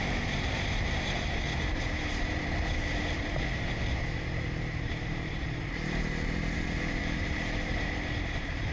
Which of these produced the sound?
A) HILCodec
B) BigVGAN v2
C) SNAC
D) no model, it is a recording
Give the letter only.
B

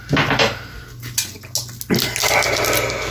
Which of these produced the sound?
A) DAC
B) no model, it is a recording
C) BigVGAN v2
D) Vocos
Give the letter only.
B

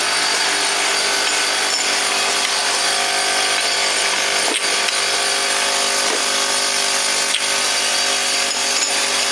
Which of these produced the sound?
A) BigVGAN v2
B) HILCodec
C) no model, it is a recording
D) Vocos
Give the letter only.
C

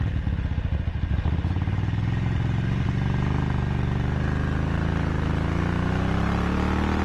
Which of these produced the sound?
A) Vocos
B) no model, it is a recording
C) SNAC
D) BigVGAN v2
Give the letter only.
B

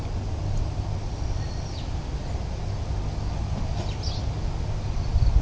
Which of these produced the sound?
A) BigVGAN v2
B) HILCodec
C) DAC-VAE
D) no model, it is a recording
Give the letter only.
D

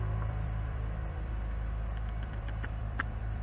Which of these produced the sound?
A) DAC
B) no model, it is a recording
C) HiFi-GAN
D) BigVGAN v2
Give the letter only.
D